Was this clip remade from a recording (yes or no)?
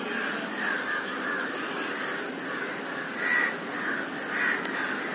no